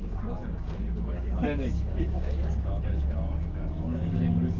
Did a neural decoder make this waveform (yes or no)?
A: yes